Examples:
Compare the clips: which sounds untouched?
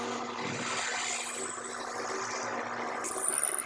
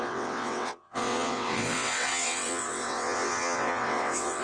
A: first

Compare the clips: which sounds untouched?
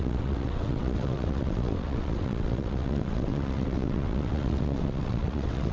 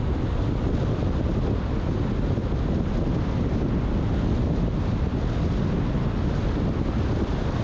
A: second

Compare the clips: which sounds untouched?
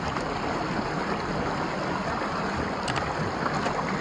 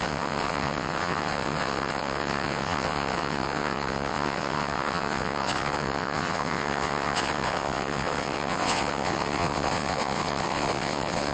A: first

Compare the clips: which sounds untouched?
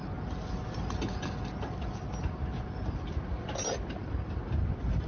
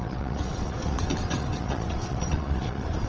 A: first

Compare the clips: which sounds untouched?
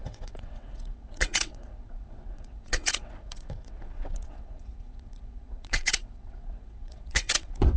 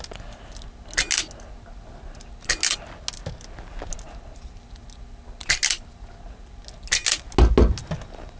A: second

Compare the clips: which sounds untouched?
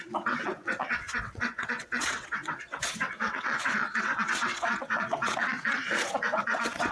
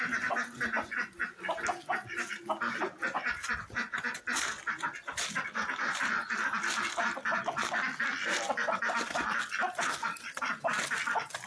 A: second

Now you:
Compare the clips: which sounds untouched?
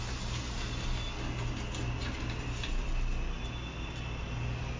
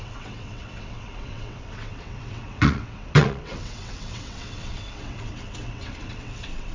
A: first